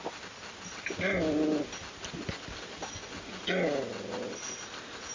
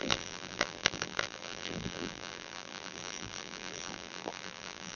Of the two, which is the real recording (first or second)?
first